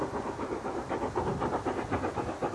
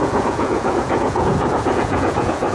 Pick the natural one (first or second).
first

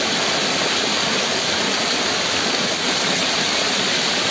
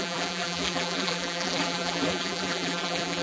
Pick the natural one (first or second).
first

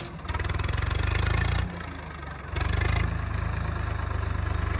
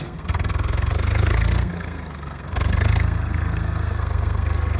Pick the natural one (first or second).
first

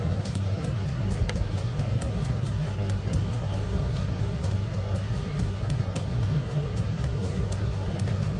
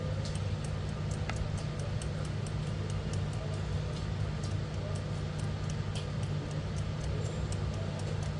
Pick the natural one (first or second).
second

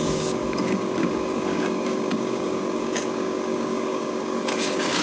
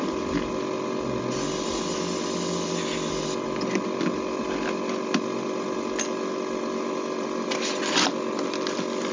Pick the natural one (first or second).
second